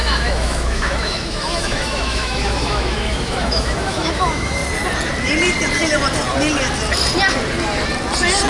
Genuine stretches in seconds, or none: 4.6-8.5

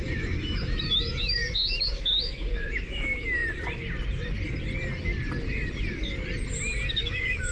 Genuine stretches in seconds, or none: 3.4-6.9

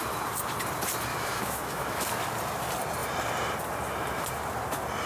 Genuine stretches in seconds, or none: 0.0-1.1; 2.1-5.1

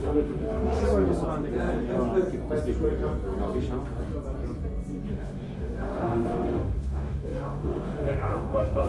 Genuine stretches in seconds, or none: 0.8-5.1

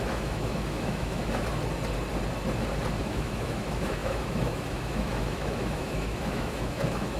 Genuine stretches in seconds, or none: 1.5-3.0

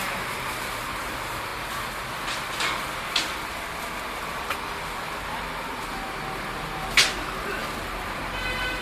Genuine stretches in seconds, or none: 0.0-8.8

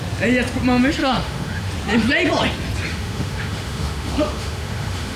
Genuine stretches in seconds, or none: 0.0-1.0; 1.7-2.9